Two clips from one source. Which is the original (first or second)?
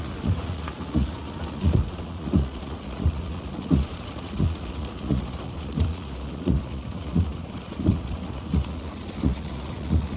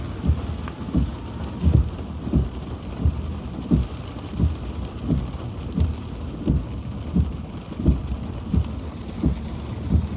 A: second